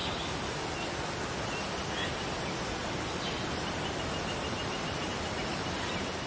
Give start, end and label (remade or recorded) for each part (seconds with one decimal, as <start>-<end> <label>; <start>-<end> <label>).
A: 0.0-6.3 recorded